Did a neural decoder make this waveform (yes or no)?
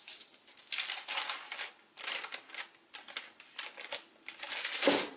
no